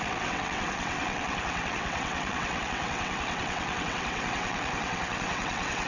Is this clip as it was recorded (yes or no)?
no